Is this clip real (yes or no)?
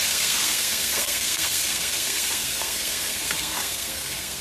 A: no